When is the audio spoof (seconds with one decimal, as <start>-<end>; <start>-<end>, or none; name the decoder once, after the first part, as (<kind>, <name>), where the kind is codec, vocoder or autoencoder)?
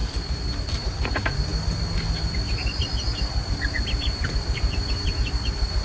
none